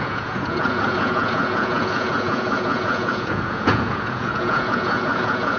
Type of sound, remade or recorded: remade